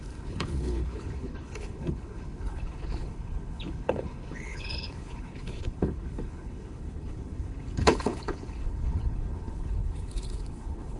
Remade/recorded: remade